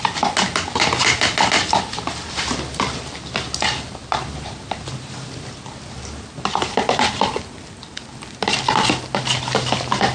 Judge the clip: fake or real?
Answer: real